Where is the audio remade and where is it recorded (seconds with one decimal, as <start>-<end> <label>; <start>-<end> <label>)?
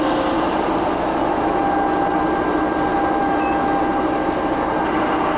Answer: 0.0-0.9 recorded; 0.9-1.6 remade; 1.6-3.2 recorded; 3.2-3.8 remade; 3.8-5.4 recorded